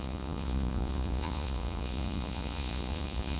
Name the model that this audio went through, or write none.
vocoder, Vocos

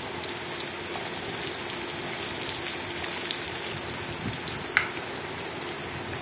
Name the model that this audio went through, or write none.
none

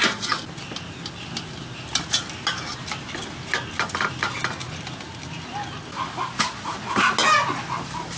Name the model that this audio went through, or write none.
none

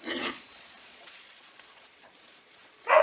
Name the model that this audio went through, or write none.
vocoder, Vocos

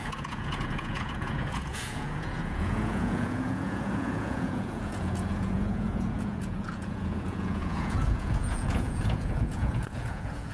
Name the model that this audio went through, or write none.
vocoder, Vocos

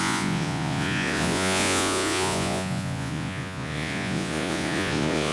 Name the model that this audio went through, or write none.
vocoder, Vocos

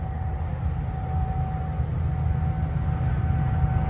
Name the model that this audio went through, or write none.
none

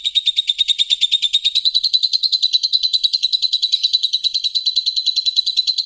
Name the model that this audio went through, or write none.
vocoder, Vocos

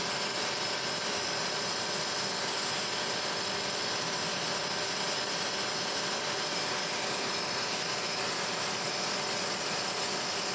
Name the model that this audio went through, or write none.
none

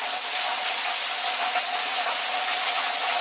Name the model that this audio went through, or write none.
vocoder, Vocos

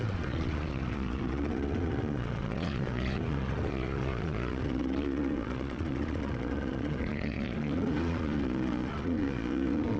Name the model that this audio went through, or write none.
vocoder, Vocos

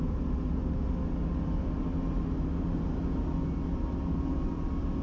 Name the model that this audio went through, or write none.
none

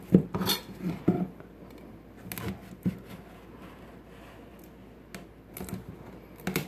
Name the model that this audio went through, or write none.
none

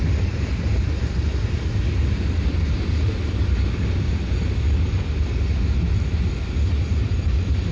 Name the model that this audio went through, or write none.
none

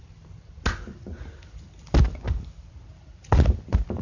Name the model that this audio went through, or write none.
none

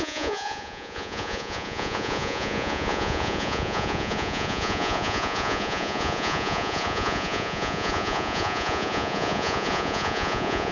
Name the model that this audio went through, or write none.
vocoder, Vocos